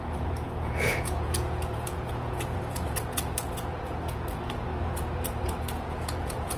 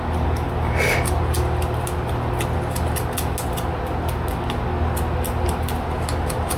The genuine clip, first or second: second